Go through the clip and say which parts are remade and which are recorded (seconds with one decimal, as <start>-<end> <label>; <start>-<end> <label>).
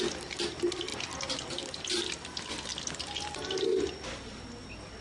0.0-5.0 recorded